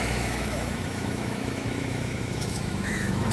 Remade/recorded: remade